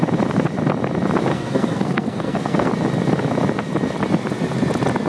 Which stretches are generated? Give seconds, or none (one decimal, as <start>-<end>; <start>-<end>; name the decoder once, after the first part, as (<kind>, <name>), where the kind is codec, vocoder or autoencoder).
1.3-2.7 (codec, SNAC)